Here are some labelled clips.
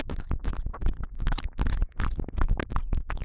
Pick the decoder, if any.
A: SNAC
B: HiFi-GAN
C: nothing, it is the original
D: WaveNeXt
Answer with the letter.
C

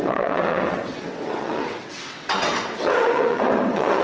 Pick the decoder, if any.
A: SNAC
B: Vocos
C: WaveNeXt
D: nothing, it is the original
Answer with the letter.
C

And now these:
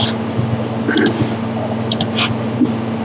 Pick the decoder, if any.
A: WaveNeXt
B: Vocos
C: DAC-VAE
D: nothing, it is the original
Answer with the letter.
D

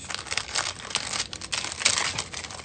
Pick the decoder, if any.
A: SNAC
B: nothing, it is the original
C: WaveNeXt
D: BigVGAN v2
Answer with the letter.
B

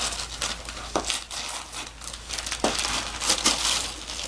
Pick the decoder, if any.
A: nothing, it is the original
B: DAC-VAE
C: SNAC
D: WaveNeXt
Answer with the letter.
A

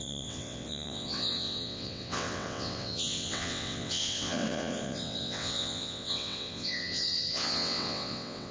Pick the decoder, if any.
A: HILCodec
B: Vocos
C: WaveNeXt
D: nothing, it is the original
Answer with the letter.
C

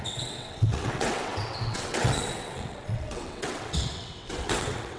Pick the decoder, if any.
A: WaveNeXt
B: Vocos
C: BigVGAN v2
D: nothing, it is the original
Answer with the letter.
A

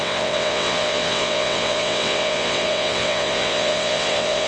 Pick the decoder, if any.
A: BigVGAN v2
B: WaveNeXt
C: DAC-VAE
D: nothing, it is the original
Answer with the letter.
B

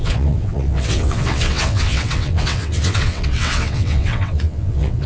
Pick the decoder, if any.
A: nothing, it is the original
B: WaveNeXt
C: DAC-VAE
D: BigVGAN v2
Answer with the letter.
B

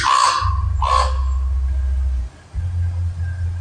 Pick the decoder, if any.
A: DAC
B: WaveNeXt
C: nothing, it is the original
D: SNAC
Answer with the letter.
C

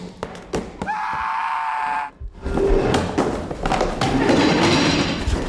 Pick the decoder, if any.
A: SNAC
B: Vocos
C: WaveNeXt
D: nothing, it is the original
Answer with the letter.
D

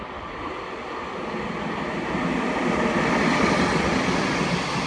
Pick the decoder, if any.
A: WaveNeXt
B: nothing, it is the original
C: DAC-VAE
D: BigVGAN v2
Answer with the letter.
B